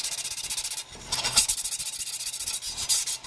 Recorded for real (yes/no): yes